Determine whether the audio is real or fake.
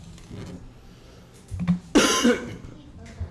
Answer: real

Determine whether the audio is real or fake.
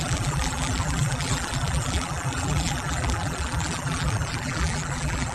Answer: fake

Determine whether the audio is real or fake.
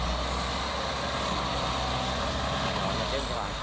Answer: real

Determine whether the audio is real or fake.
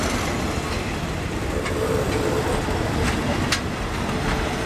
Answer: real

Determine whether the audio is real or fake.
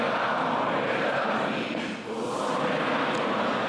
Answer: real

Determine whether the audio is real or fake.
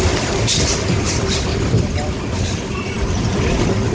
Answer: fake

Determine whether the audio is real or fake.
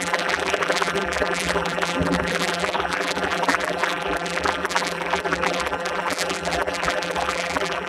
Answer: fake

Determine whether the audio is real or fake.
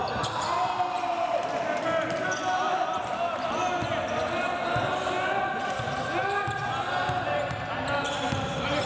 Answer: real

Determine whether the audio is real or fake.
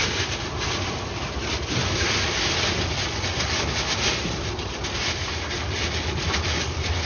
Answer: real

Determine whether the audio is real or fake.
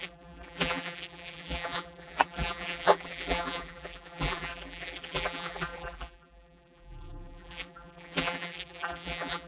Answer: fake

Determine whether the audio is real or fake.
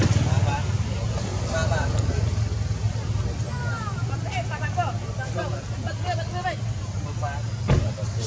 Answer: real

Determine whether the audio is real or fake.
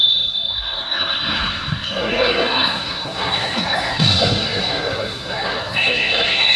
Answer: fake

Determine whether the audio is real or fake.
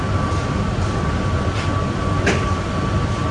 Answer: real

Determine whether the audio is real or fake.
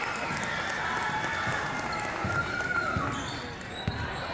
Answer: real